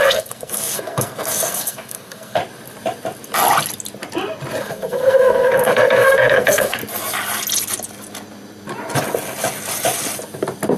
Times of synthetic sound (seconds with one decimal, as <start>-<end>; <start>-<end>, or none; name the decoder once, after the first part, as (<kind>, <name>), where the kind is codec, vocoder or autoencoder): 0.0-2.4 (codec, SNAC); 4.6-6.8